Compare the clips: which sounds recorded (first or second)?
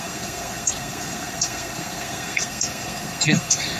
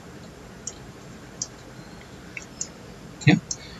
second